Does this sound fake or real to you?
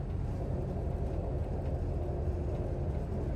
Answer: real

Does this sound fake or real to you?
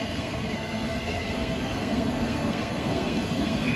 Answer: fake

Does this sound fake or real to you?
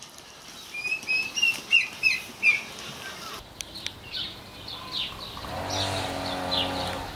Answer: real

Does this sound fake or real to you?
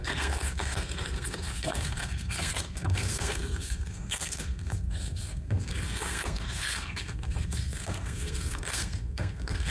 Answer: fake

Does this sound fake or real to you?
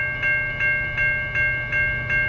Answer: real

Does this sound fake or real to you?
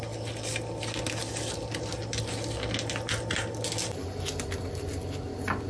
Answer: real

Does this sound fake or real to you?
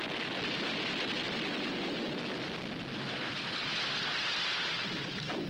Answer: real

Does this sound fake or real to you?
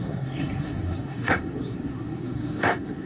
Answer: fake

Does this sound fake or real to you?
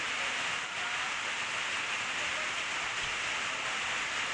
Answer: real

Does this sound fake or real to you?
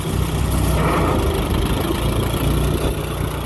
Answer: real